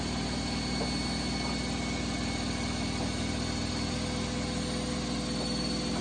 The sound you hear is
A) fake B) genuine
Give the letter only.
B